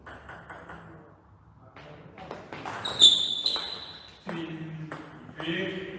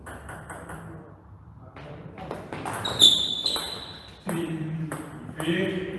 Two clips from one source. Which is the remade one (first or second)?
second